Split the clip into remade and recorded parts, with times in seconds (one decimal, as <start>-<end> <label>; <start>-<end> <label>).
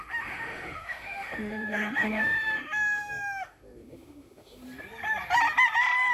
0.0-4.6 remade; 4.6-6.1 recorded